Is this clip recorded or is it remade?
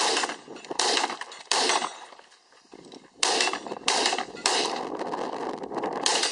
remade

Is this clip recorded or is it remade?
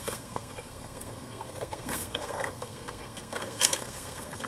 remade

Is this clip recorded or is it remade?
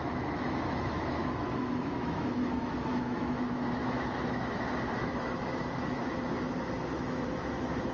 remade